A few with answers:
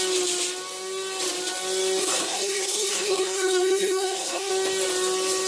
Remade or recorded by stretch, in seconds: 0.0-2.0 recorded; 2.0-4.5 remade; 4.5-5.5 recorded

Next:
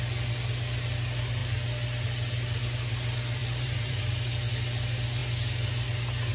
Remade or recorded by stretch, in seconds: 0.0-3.4 recorded; 3.4-4.0 remade; 4.0-6.3 recorded

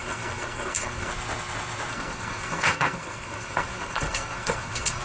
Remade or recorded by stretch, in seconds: 0.0-1.1 remade; 1.1-1.9 recorded; 1.9-5.0 remade

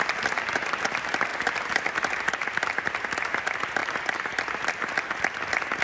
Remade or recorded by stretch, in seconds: 0.0-5.8 recorded

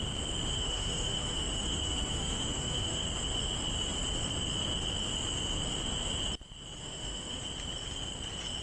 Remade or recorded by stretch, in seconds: 0.0-0.5 recorded; 0.5-3.1 remade; 3.1-6.8 recorded; 6.8-7.4 remade; 7.4-8.6 recorded

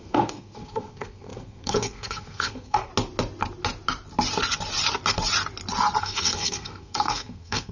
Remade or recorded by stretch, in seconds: 0.0-2.9 remade; 2.9-6.0 recorded; 6.0-7.7 remade

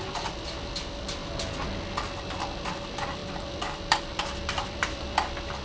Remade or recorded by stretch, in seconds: 0.0-1.2 remade; 1.2-2.2 recorded; 2.2-5.6 remade

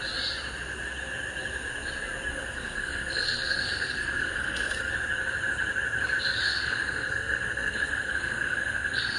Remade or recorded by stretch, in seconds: 0.0-2.3 recorded; 2.3-4.9 remade; 4.9-6.4 recorded; 6.4-9.2 remade